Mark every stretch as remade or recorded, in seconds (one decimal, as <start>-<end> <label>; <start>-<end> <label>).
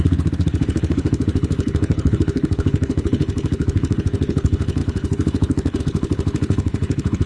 0.0-7.3 remade